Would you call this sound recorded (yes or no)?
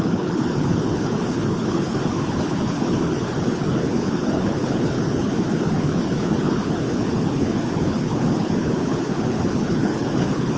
no